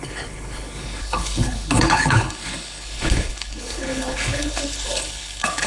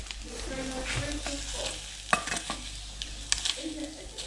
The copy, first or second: first